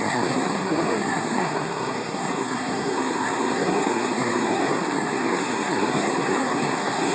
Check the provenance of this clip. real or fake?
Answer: fake